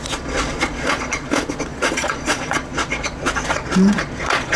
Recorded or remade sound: remade